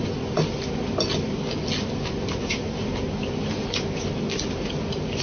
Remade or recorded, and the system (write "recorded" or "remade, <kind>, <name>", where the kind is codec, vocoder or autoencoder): recorded